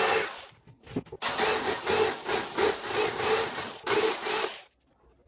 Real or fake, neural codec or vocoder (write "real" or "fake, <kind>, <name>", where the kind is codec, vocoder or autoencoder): real